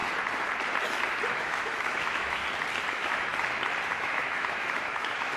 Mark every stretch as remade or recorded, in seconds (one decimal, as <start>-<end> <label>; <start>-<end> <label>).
0.0-1.3 recorded; 1.3-2.4 remade; 2.4-2.9 recorded; 2.9-3.3 remade; 3.3-3.9 recorded; 3.9-5.4 remade